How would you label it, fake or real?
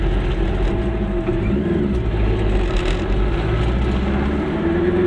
real